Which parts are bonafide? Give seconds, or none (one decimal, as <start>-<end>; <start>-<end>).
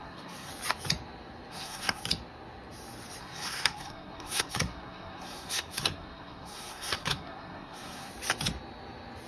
0.5-1.5; 2.0-3.2; 8.1-9.3